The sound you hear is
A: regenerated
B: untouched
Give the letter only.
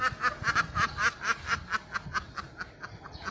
B